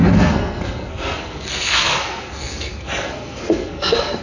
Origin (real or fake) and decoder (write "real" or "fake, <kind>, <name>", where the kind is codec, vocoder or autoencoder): fake, codec, SNAC